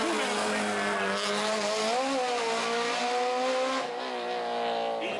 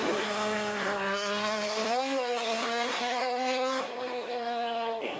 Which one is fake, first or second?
second